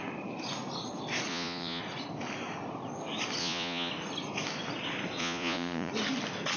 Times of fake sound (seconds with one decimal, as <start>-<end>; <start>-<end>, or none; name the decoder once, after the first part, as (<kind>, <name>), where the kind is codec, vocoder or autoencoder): 1.3-1.8 (vocoder, Vocos); 3.4-3.9; 5.2-5.9